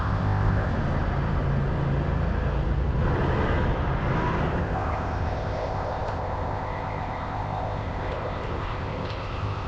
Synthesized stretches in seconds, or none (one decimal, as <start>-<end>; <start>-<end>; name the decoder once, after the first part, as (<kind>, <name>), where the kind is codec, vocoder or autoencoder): 0.0-0.7 (codec, ZipCodec); 4.6-9.7